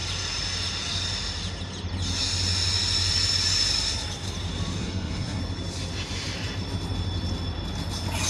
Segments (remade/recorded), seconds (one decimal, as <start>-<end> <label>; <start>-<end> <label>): 0.0-4.8 recorded; 4.8-5.4 remade; 5.4-8.3 recorded